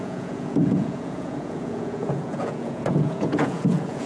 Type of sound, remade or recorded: remade